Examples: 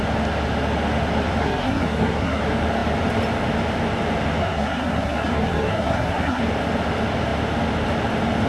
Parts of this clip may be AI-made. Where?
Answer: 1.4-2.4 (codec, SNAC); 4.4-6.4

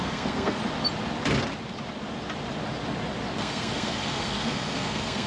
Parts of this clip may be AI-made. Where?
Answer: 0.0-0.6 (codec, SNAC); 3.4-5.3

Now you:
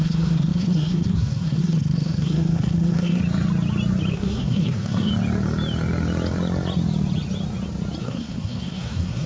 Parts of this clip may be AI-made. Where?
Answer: 0.0-3.2 (codec, SNAC); 4.1-5.1; 8.0-9.3

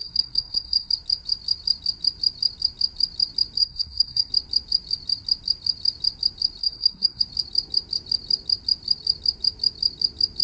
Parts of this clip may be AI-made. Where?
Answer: 0.0-0.9 (codec, SNAC); 3.6-4.3; 6.6-7.2

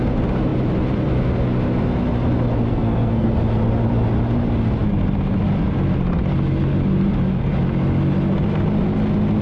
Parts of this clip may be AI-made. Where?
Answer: 2.7-3.3 (codec, SNAC)

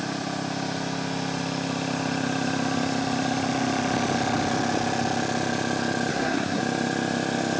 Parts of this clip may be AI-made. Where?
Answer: 6.1-6.6 (codec, SNAC)